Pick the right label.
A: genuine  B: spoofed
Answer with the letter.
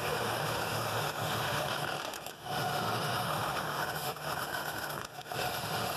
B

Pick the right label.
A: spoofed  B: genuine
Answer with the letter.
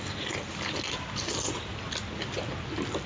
B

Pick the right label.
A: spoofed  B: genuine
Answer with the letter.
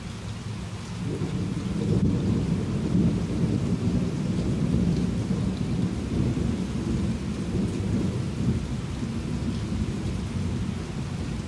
B